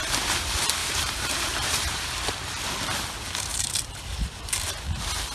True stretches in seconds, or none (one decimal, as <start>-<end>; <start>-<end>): 0.0-0.8; 2.2-3.5; 4.8-5.3